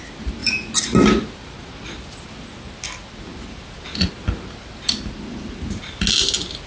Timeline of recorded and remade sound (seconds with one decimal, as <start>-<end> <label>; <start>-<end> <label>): 0.0-6.7 recorded